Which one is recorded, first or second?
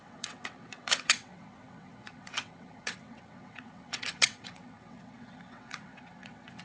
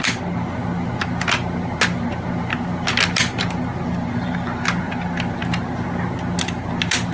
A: second